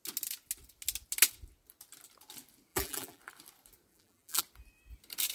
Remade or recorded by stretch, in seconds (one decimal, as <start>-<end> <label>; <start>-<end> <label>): 0.0-2.7 recorded; 2.7-3.2 remade; 3.2-3.9 recorded; 3.9-4.4 remade; 4.4-5.3 recorded